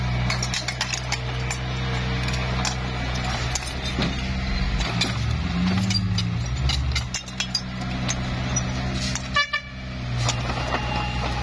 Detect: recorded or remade recorded